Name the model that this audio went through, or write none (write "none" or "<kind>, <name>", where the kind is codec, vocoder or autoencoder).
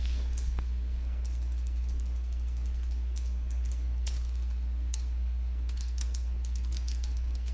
codec, SNAC